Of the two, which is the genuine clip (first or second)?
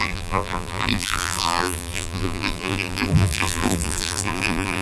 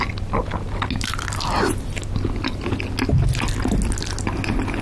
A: second